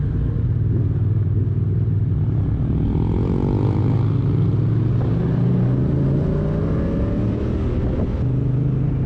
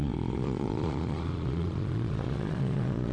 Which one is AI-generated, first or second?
second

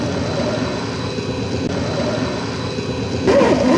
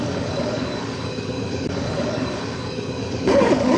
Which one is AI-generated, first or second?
second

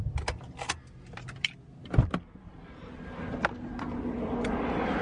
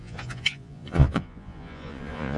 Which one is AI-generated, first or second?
second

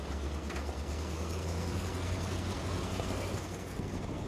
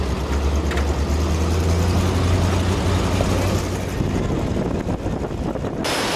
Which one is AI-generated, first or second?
first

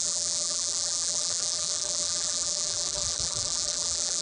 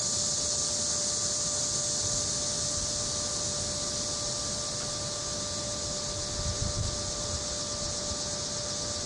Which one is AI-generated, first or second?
first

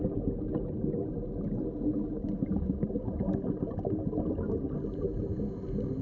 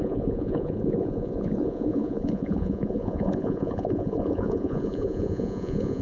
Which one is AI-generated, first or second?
second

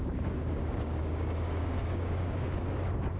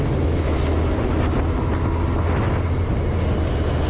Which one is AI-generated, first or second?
first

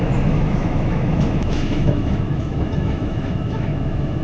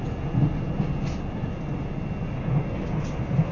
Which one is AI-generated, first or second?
first